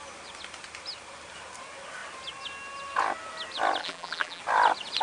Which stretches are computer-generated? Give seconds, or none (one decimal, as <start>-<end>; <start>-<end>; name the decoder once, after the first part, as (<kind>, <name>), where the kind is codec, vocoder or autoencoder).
3.8-4.4 (vocoder, BigVGAN v2)